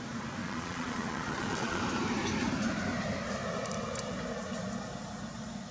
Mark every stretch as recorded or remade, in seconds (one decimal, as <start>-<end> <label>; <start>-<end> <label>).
0.0-0.4 recorded; 0.4-1.8 remade; 1.8-5.7 recorded